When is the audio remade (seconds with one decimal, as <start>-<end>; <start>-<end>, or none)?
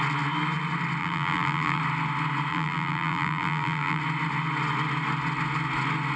1.0-1.8; 2.5-4.0